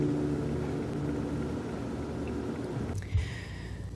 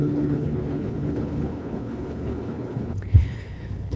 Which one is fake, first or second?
second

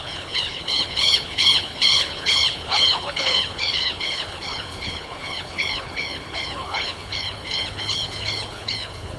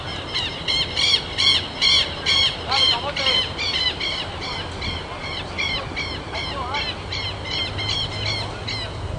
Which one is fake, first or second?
first